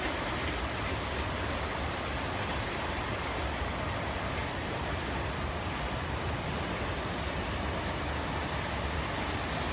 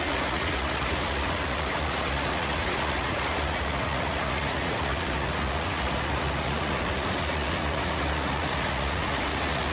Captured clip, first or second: first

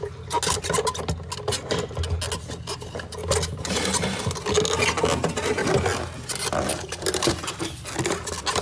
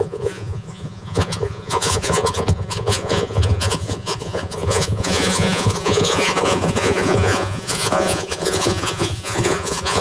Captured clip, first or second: first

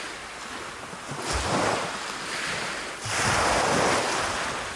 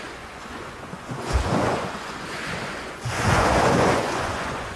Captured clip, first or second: first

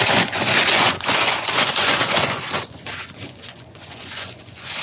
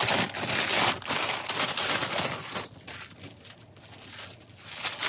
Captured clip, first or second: second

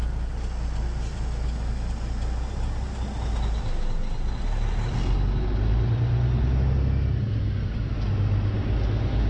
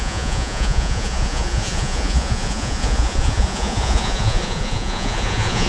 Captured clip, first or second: first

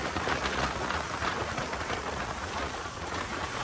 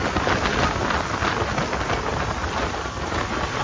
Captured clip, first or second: second